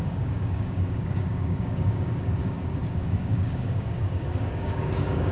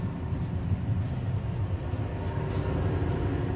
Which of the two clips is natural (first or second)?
second